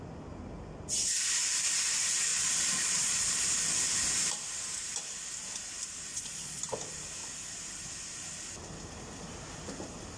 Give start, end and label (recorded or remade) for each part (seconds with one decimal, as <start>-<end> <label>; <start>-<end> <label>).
0.0-2.3 recorded; 2.3-3.4 remade; 3.4-6.1 recorded; 6.1-6.6 remade; 6.6-10.2 recorded

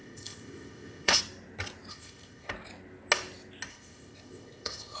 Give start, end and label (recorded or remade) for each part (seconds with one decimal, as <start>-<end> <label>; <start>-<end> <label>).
0.0-1.2 remade; 1.2-1.9 recorded; 1.9-2.5 remade; 2.5-3.7 recorded; 3.7-5.0 remade

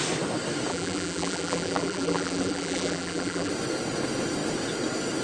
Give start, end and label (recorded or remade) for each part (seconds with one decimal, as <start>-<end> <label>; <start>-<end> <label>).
0.0-0.7 recorded; 0.7-3.5 remade; 3.5-5.2 recorded

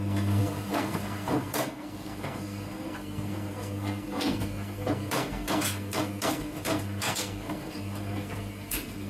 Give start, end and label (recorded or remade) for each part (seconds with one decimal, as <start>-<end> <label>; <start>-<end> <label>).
0.0-9.1 remade

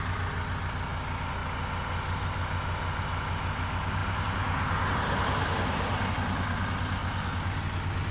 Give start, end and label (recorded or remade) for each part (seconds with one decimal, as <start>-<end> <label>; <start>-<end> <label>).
0.0-4.0 recorded; 4.0-6.1 remade; 6.1-7.0 recorded; 7.0-7.6 remade; 7.6-8.1 recorded

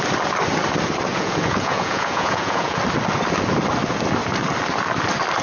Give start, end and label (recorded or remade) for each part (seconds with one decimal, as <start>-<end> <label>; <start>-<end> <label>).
0.0-1.1 recorded; 1.1-2.8 remade; 2.8-5.4 recorded

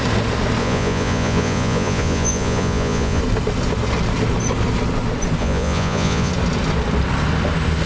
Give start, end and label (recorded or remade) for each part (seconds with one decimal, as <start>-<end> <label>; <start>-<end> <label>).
0.0-0.6 recorded; 0.6-3.2 remade; 3.2-5.4 recorded; 5.4-6.3 remade; 6.3-7.9 recorded

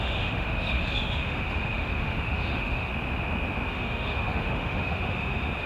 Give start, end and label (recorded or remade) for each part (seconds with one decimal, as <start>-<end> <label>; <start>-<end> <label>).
0.0-2.9 remade; 2.9-3.7 recorded; 3.7-5.7 remade